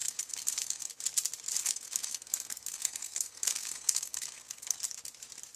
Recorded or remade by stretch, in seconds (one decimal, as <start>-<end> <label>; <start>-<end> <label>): 0.0-0.9 remade; 0.9-1.6 recorded; 1.6-4.8 remade; 4.8-5.6 recorded